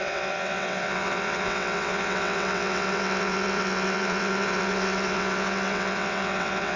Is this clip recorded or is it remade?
remade